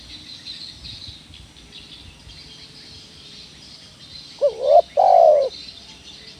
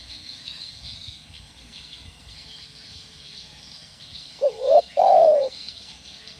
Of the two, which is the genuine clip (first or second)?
first